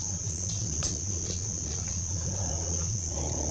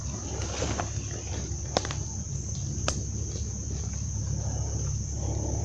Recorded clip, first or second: second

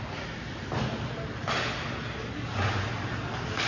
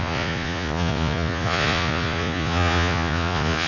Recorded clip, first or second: first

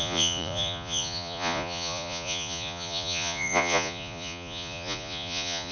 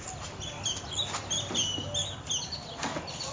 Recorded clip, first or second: second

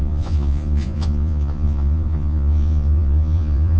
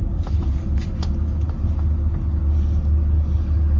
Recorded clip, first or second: second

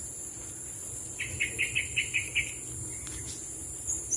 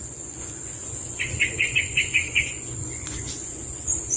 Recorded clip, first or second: first